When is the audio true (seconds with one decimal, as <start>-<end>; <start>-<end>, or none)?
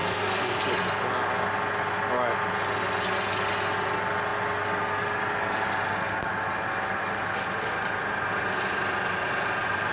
0.6-9.9